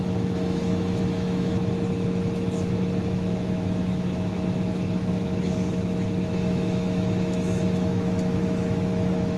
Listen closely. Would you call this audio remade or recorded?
remade